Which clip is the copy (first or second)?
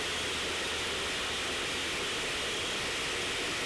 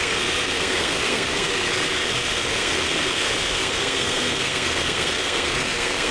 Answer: second